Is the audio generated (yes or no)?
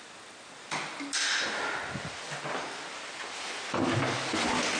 no